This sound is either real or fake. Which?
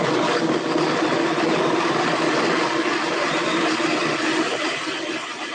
real